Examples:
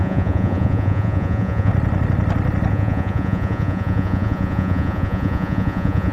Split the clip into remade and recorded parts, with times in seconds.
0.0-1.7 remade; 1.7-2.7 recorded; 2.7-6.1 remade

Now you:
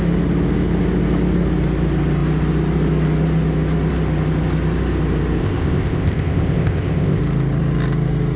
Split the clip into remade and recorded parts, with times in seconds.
0.0-5.4 recorded; 5.4-7.2 remade; 7.2-8.4 recorded

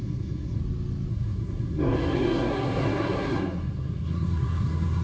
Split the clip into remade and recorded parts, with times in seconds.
0.0-0.6 remade; 0.6-1.1 recorded; 1.1-5.0 remade

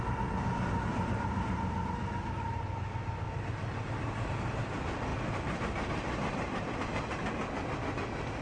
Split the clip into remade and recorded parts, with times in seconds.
0.0-0.9 recorded; 0.9-2.8 remade; 2.8-5.1 recorded; 5.1-6.7 remade; 6.7-8.4 recorded

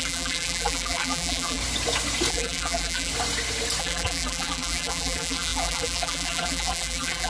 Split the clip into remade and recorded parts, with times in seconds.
0.0-1.6 remade; 1.6-2.3 recorded; 2.3-3.1 remade; 3.1-3.8 recorded; 3.8-7.3 remade